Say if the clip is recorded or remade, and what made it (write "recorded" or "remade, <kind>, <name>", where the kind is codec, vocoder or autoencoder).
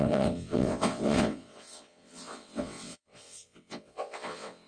remade, vocoder, WaveNeXt